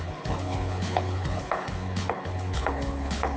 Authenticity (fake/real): fake